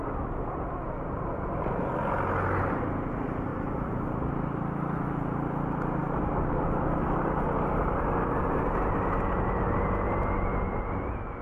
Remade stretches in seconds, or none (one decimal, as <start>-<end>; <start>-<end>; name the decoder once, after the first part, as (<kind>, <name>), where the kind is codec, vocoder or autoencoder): 3.5-4.3 (vocoder, BigVGAN v2); 6.0-9.2